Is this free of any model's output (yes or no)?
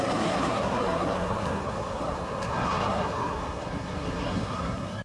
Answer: no